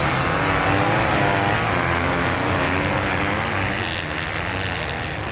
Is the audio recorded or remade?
recorded